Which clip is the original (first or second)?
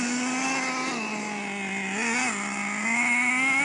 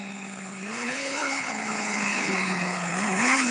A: first